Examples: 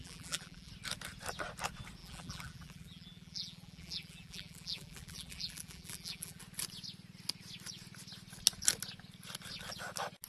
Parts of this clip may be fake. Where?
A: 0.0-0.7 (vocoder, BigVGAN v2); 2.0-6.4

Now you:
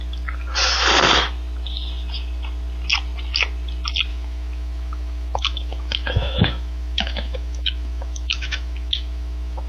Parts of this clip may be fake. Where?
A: 4.1-9.7 (autoencoder, DAC-VAE)